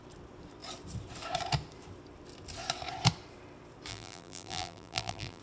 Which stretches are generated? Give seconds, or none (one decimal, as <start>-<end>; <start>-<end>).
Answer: 3.9-5.4